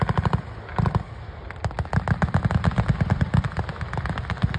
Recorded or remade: recorded